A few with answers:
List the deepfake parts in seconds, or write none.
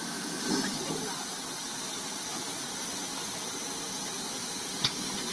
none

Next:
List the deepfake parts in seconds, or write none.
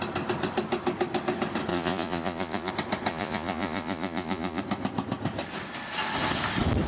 1.7-2.7 (vocoder, Vocos); 3.1-4.6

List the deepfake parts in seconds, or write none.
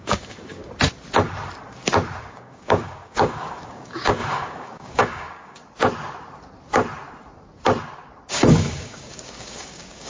0.0-0.6 (codec, DAC); 2.2-5.6; 8.3-10.1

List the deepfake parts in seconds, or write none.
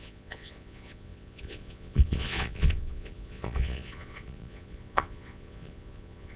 0.0-6.4 (vocoder, Vocos)